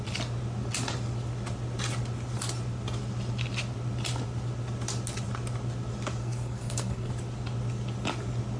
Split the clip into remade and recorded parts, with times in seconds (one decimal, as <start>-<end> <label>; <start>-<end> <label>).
0.0-6.2 recorded; 6.2-7.1 remade; 7.1-8.6 recorded